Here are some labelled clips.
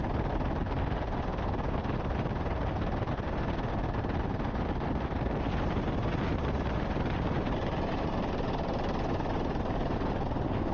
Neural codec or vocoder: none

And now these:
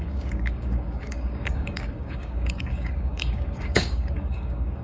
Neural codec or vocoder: codec, DAC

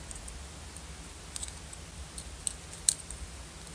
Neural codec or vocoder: none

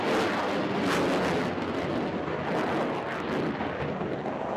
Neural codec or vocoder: none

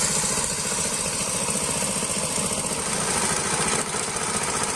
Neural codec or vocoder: none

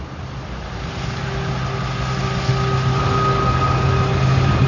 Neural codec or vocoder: none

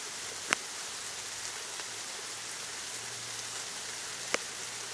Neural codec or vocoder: none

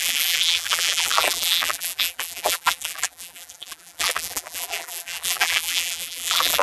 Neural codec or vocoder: vocoder, BigVGAN v2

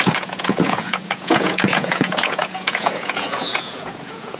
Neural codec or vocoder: vocoder, Vocos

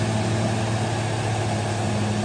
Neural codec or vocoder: none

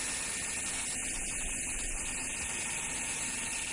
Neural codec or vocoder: none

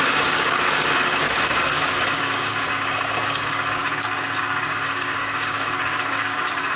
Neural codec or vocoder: codec, DAC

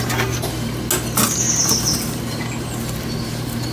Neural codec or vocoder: none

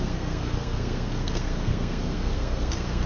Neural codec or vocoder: codec, SNAC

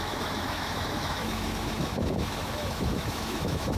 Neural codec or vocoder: autoencoder, DAC-VAE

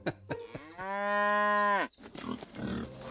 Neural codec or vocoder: none